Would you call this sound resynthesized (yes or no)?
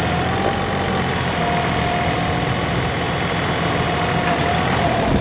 no